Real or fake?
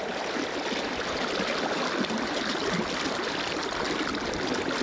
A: real